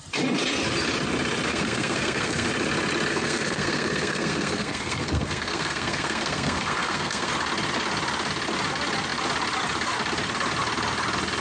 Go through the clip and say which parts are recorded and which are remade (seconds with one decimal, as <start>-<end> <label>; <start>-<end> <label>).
0.0-1.5 recorded; 1.5-2.5 remade; 2.5-3.1 recorded; 3.1-7.3 remade; 7.3-11.4 recorded